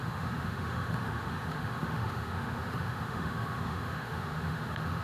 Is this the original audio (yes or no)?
no